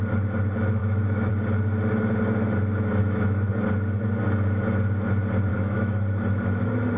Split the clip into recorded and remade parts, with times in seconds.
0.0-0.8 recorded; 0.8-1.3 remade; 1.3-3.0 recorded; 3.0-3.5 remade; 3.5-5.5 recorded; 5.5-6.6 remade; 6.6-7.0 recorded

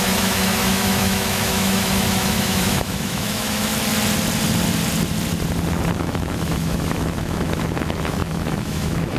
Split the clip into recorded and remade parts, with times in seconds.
0.0-3.7 remade; 3.7-5.9 recorded; 5.9-9.2 remade

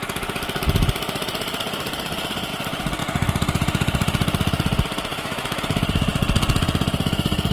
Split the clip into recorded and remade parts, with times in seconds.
0.0-5.1 recorded; 5.1-5.6 remade; 5.6-7.5 recorded

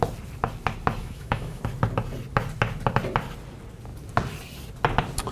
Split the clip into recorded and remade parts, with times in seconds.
0.0-1.0 recorded; 1.0-1.6 remade; 1.6-5.3 recorded

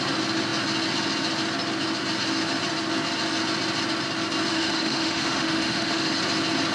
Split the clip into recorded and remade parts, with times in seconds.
0.0-4.5 recorded; 4.5-6.1 remade; 6.1-6.7 recorded